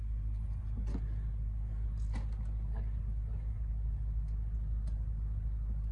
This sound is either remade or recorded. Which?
recorded